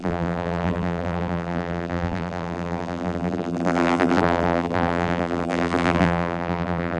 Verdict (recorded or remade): remade